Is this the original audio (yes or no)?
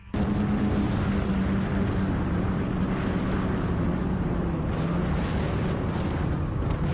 yes